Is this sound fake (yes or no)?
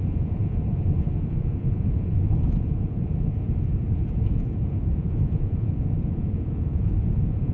yes